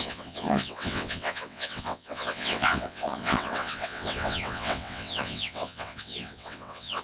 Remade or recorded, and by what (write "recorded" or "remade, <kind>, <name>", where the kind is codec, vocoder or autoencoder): remade, vocoder, WaveNeXt